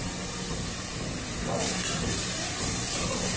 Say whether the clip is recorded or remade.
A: recorded